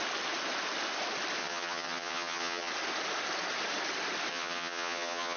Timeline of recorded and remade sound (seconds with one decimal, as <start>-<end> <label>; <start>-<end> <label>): 0.0-1.4 recorded; 1.4-2.7 remade; 2.7-4.3 recorded; 4.3-5.4 remade